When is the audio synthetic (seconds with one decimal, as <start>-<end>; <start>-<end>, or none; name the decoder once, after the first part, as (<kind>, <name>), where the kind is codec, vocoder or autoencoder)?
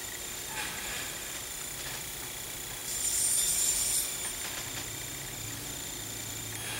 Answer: 0.0-0.9 (vocoder, BigVGAN v2); 1.4-2.1